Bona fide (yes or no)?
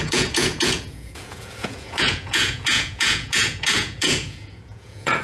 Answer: no